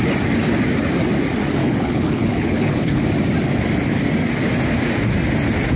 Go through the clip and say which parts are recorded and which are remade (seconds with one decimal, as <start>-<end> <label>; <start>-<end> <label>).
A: 0.0-1.6 recorded; 1.6-3.0 remade; 3.0-5.8 recorded